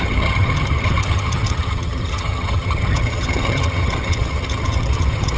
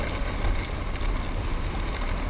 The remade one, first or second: first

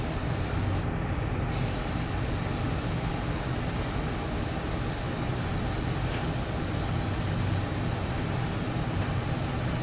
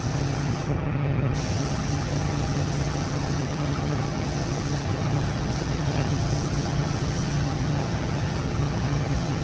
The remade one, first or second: second